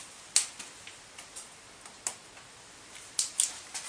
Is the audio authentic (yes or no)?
yes